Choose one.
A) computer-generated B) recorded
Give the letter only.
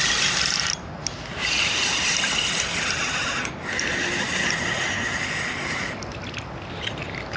B